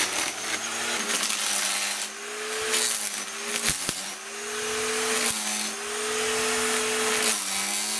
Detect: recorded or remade recorded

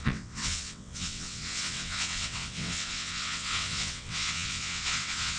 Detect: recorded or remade remade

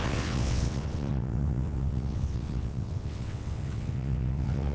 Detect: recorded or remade remade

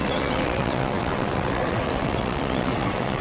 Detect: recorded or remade remade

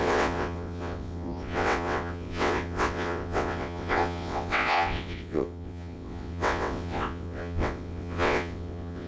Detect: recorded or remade remade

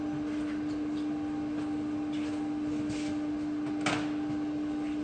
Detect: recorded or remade recorded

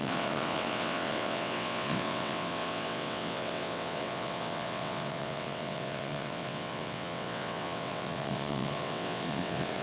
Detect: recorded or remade remade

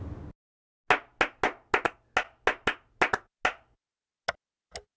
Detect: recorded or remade recorded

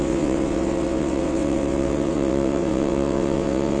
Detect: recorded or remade remade